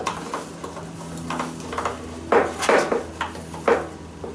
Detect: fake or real real